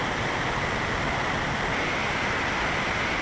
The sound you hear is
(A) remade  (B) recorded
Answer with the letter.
B